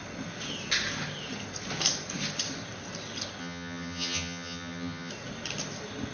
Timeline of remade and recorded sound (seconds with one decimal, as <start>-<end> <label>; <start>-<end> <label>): 0.0-3.4 recorded; 3.4-5.1 remade; 5.1-6.1 recorded